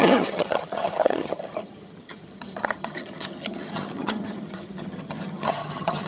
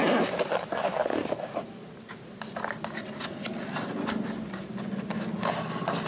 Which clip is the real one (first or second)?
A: second